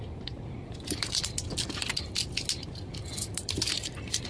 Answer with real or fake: real